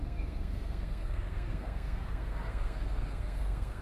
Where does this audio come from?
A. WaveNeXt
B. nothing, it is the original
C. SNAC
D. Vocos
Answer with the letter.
C